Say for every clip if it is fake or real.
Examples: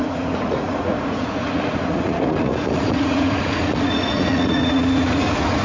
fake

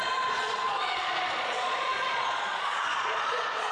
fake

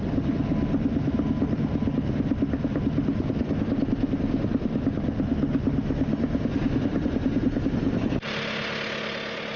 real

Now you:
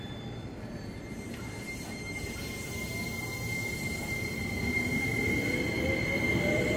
fake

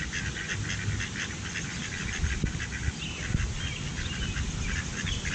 real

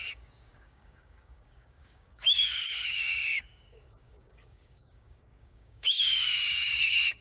fake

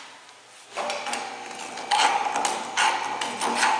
real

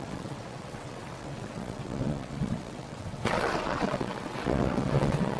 fake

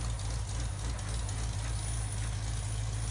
real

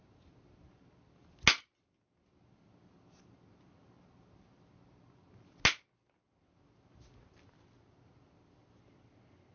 real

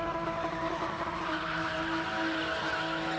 real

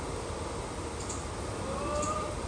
real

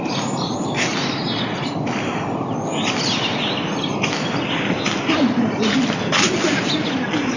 real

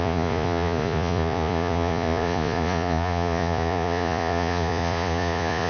fake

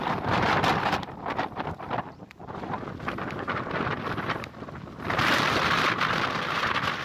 fake